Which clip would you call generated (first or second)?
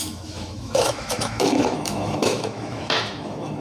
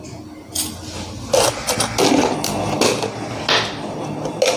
first